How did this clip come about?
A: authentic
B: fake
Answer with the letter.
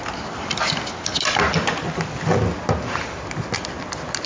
A